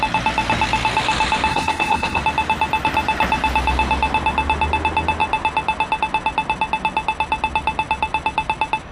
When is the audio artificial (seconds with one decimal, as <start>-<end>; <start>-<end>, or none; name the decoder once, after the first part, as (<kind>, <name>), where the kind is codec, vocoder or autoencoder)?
1.5-2.2 (codec, SNAC)